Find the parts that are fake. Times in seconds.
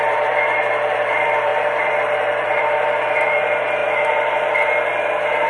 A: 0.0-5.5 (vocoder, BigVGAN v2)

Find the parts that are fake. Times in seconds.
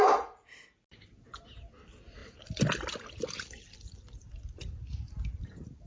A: 2.2-4.3 (vocoder, BigVGAN v2); 4.8-5.5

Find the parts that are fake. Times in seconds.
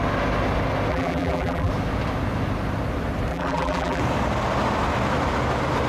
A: 0.9-1.7 (vocoder, BigVGAN v2); 3.3-4.0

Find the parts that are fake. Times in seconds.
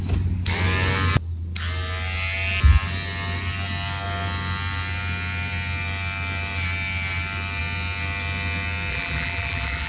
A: 8.9-9.9 (vocoder, BigVGAN v2)